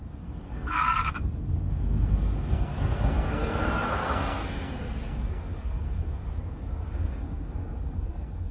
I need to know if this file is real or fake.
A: fake